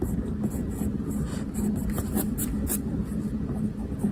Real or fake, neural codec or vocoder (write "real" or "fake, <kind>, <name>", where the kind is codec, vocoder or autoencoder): real